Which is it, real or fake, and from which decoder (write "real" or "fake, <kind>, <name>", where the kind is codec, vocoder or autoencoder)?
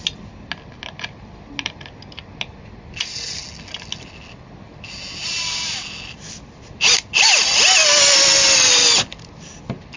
real